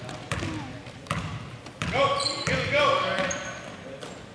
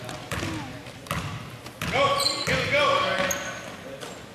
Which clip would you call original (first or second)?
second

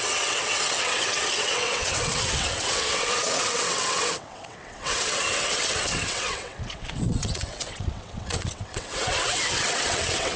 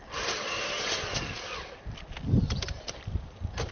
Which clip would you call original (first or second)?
second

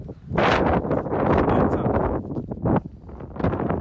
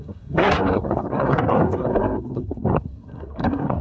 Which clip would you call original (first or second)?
first